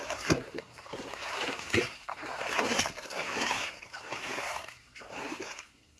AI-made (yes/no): yes